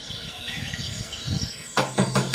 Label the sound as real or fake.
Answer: fake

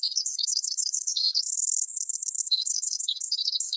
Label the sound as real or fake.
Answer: fake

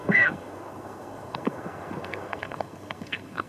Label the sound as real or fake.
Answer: fake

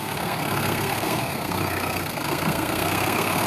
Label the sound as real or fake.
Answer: fake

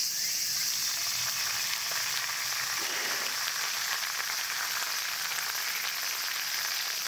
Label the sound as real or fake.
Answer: real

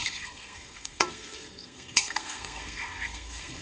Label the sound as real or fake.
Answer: fake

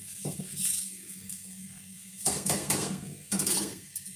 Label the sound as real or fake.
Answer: fake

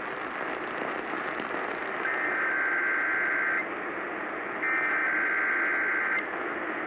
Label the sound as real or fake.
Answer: real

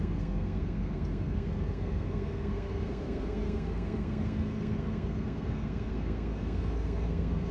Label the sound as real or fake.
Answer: fake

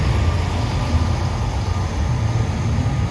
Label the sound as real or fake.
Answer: real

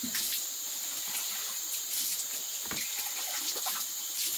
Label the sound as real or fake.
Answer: real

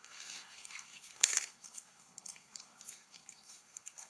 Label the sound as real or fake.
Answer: fake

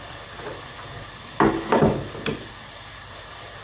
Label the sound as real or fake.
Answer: real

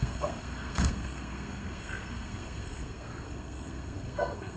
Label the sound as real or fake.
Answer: fake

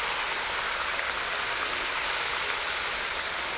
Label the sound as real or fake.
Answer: real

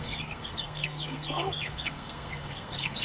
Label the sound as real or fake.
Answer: fake